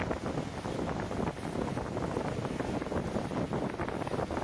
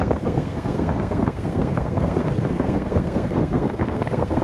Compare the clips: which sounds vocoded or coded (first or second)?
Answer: second